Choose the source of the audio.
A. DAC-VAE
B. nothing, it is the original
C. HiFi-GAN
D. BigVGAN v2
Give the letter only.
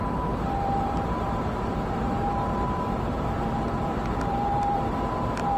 D